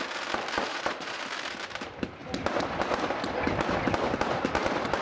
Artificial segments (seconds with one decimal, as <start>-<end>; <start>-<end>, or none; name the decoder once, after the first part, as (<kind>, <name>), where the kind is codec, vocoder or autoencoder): 0.7-1.2 (vocoder, Vocos)